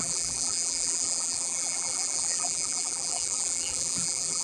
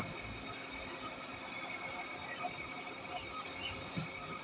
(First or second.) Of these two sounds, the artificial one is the first